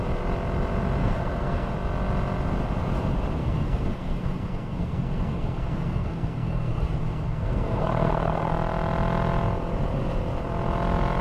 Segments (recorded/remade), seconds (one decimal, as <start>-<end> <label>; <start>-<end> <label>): 0.0-1.0 recorded; 1.0-1.7 remade; 1.7-3.4 recorded; 3.4-8.5 remade; 8.5-11.2 recorded

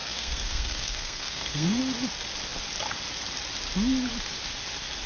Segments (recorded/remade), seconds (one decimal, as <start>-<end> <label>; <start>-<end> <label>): 0.0-1.8 remade; 1.8-5.1 recorded

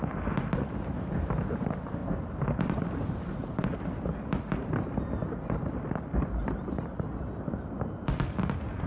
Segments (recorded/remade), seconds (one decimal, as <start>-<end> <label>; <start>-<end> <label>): 0.0-2.0 recorded; 2.0-4.0 remade; 4.0-8.9 recorded

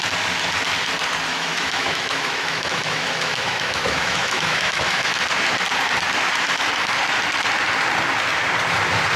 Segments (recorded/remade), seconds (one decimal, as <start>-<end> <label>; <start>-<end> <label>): 0.0-1.3 recorded; 1.3-5.2 remade; 5.2-9.2 recorded

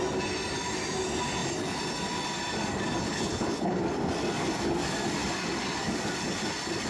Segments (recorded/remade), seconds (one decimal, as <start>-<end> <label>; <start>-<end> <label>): 0.0-3.0 recorded; 3.0-3.8 remade; 3.8-6.9 recorded

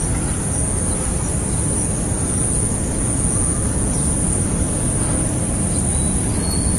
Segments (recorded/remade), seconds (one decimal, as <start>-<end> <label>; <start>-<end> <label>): 0.0-6.8 recorded

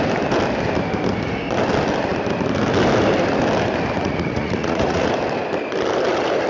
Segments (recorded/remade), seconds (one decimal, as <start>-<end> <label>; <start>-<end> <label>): 0.0-4.0 recorded; 4.0-5.1 remade; 5.1-6.5 recorded